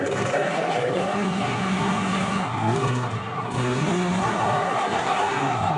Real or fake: fake